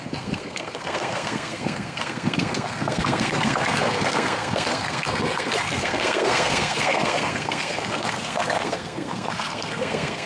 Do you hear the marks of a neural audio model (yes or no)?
yes